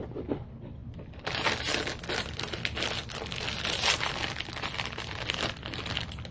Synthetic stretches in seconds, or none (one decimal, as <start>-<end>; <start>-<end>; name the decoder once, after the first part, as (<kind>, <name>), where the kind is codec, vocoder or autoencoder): none